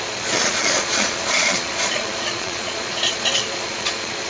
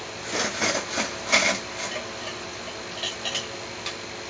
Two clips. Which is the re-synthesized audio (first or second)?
first